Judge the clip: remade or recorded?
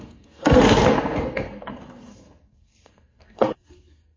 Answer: remade